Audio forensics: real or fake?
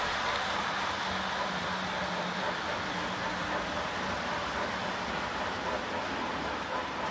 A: real